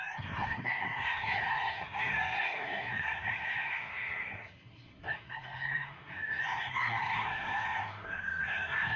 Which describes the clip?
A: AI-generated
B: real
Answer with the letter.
A